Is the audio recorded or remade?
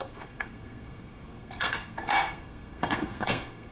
remade